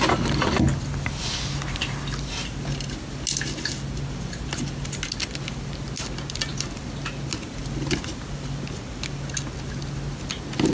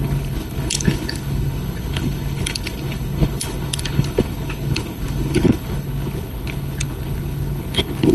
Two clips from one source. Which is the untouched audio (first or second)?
first